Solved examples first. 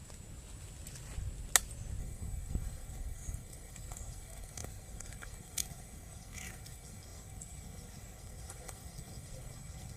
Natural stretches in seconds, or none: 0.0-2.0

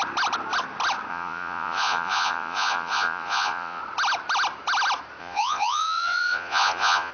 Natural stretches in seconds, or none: 0.0-1.1; 3.8-5.2

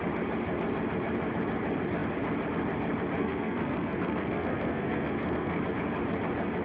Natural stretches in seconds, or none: 0.0-3.2; 5.6-6.6

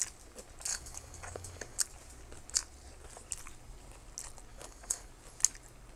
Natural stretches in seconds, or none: 0.0-0.7; 1.8-4.5; 5.1-6.0

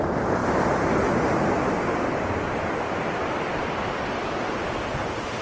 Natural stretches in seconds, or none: 0.0-0.4; 3.5-5.4